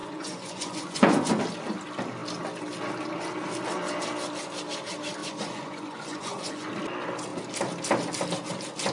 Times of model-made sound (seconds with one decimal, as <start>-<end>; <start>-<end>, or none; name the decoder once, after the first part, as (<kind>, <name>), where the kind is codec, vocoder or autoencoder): 0.0-1.4 (vocoder, Vocos); 5.2-6.7